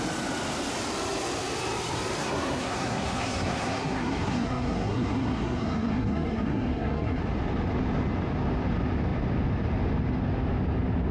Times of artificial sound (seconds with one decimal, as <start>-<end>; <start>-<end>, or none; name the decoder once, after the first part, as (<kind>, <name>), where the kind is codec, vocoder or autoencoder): 2.2-7.2 (codec, SNAC)